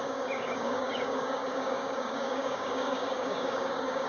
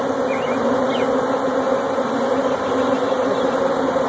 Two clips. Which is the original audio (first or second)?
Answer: second